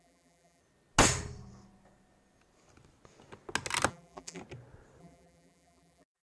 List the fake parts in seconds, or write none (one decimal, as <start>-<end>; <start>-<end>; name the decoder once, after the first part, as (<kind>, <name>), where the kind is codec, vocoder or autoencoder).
0.0-0.6 (vocoder, BigVGAN v2); 3.9-4.4; 5.0-6.3